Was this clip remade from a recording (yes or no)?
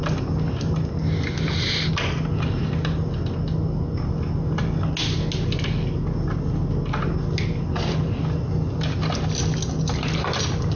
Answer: no